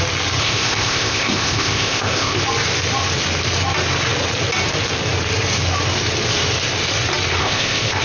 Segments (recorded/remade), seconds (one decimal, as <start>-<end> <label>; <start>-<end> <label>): 0.0-0.4 recorded; 0.4-2.4 remade; 2.4-7.4 recorded; 7.4-8.0 remade